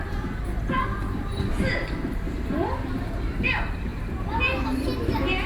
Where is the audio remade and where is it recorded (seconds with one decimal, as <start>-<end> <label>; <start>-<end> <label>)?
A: 0.0-5.5 recorded